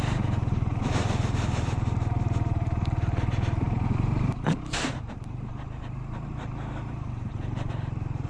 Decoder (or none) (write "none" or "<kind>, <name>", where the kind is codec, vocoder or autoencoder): vocoder, BigVGAN v2